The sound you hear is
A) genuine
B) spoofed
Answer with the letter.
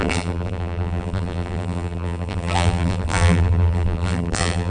B